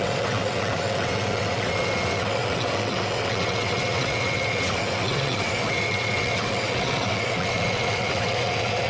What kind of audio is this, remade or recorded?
remade